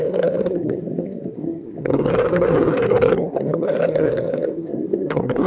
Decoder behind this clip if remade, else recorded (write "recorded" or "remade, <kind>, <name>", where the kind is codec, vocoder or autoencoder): remade, codec, SNAC